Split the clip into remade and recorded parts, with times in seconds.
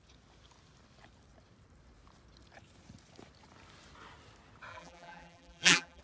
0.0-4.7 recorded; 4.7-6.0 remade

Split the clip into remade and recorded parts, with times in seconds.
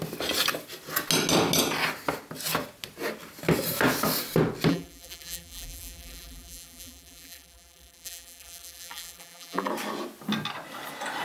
0.0-4.7 recorded; 4.7-9.7 remade; 9.7-11.2 recorded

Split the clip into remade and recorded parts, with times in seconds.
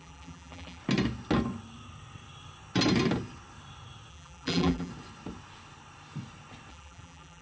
0.0-0.8 remade; 0.8-4.1 recorded; 4.1-4.9 remade; 4.9-6.7 recorded; 6.7-7.4 remade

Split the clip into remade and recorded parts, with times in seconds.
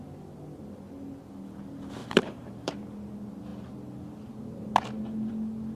0.0-2.0 recorded; 2.0-2.7 remade; 2.7-5.8 recorded